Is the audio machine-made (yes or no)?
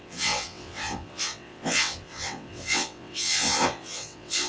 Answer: yes